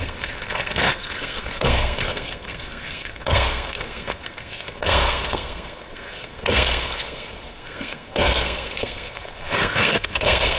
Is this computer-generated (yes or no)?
yes